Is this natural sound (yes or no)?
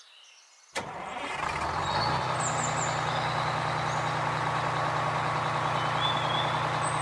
yes